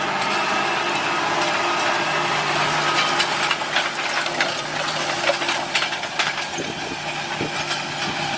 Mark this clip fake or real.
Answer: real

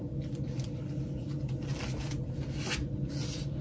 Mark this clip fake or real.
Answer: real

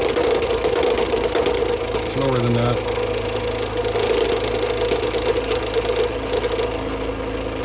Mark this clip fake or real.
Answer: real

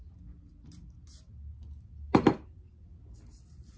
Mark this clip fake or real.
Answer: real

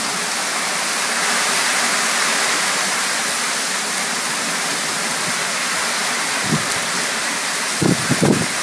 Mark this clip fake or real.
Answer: real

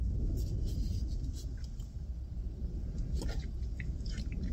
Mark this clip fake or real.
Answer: real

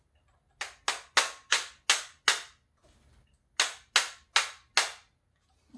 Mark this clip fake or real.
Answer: real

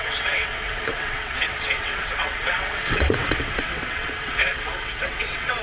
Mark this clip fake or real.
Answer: fake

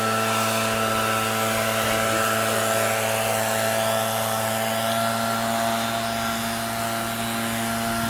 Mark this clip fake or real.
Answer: real